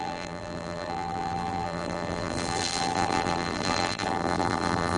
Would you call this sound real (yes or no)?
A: no